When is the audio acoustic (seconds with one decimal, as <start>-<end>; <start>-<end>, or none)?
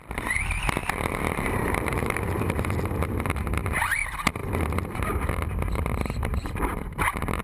0.0-0.8; 2.8-7.4